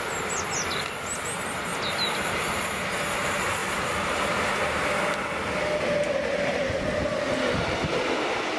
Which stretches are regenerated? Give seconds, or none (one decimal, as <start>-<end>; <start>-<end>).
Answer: 1.7-2.6; 3.6-4.9